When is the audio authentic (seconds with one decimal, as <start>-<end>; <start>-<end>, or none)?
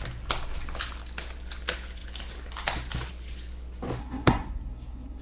0.0-4.0